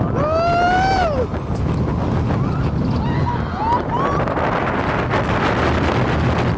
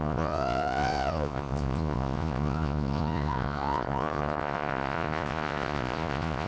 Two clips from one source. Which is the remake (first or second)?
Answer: second